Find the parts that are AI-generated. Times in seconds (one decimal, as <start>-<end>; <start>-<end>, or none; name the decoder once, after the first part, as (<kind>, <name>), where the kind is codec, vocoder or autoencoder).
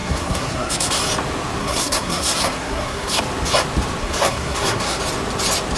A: 0.0-1.0 (codec, SNAC); 1.6-3.2; 4.0-5.0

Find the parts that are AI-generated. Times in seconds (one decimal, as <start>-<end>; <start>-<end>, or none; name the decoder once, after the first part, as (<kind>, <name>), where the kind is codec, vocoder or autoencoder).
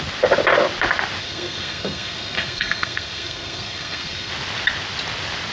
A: 1.2-4.3 (codec, SNAC)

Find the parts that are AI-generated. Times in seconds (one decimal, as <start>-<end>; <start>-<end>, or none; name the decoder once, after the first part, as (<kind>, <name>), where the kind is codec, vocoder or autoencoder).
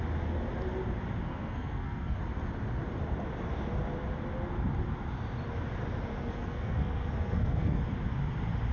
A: 1.2-2.2 (codec, SNAC); 6.1-7.8